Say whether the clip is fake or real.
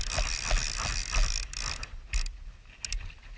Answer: real